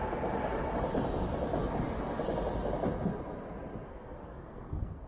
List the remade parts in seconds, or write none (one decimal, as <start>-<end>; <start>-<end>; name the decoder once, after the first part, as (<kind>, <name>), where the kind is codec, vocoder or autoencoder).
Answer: 3.9-5.1 (codec, SNAC)